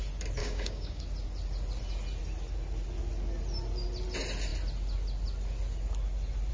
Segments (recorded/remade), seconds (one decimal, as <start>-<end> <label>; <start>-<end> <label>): 0.0-0.4 recorded; 0.4-1.0 remade; 1.0-6.5 recorded